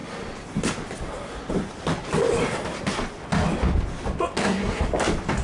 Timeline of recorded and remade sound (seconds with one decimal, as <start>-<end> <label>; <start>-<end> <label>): 0.0-4.4 recorded; 4.4-4.9 remade; 4.9-5.4 recorded